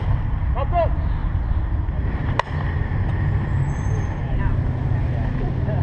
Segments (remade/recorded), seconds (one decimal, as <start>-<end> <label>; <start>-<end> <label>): 0.0-1.2 recorded; 1.2-4.3 remade; 4.3-5.8 recorded